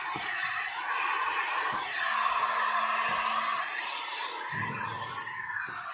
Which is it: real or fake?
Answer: real